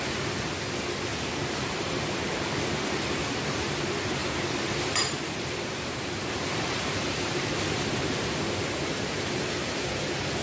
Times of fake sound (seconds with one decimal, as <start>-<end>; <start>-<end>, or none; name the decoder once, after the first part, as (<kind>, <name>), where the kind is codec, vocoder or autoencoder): 1.1-3.2 (vocoder, BigVGAN v2); 4.2-9.5